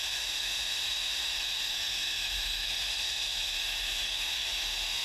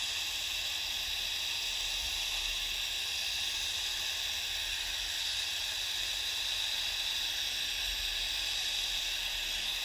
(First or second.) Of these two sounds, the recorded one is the second